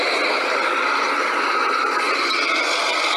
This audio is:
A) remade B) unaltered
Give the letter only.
B